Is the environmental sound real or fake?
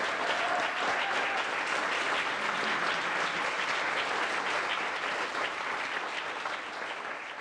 real